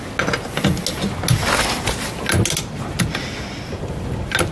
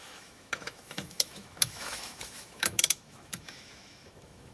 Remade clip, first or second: second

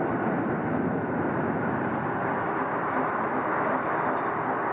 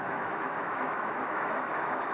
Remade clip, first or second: second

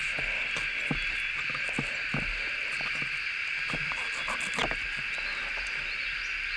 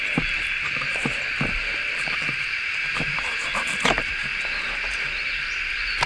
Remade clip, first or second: second